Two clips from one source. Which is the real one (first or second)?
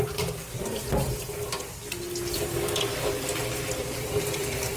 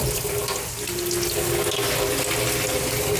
second